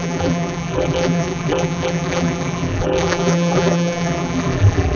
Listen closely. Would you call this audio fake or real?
fake